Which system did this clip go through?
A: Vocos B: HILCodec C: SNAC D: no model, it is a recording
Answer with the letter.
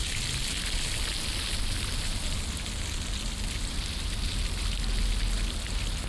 D